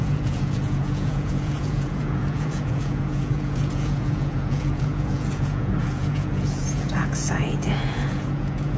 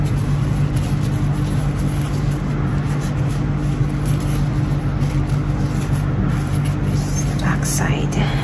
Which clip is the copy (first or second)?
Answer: first